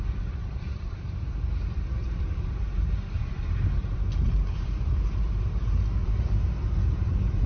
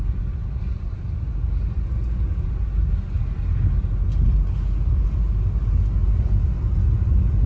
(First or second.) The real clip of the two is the second